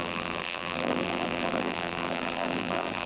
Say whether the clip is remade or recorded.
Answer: remade